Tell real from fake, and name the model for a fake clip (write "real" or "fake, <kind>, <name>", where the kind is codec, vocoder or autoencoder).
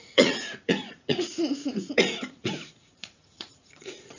fake, vocoder, Vocos